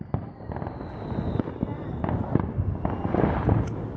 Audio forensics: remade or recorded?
recorded